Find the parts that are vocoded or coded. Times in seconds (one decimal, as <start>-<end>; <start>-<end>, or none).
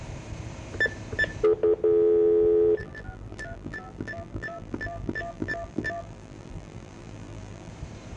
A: 2.8-7.7